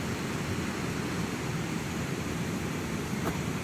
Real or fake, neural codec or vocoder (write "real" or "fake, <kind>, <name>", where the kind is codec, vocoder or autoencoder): real